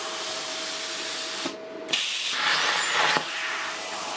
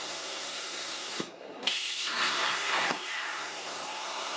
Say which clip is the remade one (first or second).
second